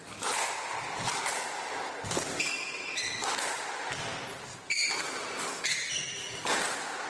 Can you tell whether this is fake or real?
real